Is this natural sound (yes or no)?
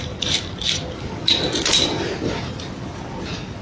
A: yes